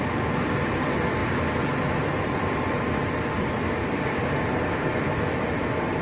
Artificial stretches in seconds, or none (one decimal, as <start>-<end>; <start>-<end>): 3.8-4.3